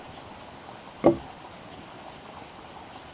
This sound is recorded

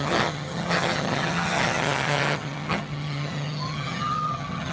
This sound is remade